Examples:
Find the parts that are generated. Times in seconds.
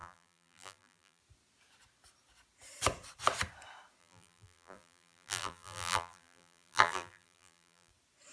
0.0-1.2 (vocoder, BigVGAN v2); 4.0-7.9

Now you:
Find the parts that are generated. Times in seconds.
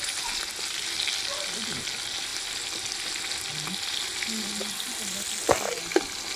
none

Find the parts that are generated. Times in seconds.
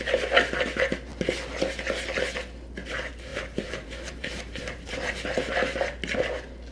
3.3-4.9 (vocoder, BigVGAN v2)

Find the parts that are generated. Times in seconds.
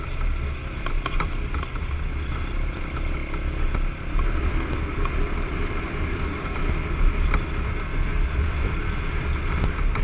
8.1-8.6 (vocoder, BigVGAN v2)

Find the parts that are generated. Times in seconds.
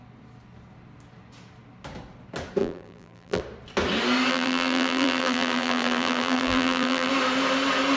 2.6-3.4 (vocoder, BigVGAN v2); 4.3-7.1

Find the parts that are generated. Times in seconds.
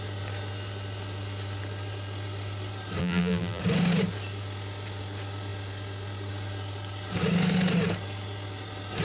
3.0-3.6 (vocoder, BigVGAN v2)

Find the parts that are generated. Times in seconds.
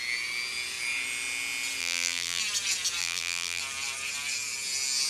1.8-2.4 (vocoder, BigVGAN v2); 3.0-3.6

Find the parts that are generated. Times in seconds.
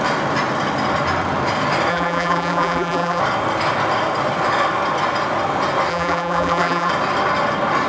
1.9-3.2 (vocoder, BigVGAN v2); 5.9-6.9